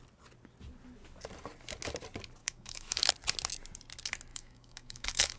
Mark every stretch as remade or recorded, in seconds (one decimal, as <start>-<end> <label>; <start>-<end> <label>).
0.0-2.4 recorded; 2.4-3.1 remade; 3.1-4.3 recorded; 4.3-5.4 remade